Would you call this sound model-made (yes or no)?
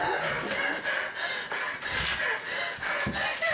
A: no